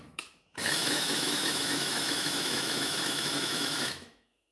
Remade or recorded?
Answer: remade